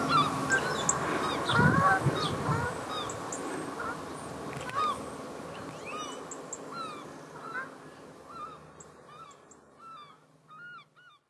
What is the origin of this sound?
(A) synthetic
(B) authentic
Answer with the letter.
B